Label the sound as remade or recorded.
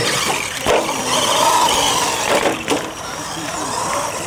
recorded